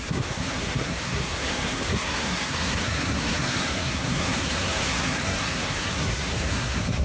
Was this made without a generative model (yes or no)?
no